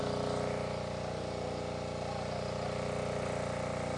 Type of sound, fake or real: real